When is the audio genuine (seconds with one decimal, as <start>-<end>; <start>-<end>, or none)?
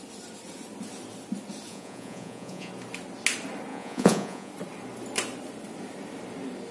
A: 0.0-1.7; 2.7-3.7; 4.5-6.7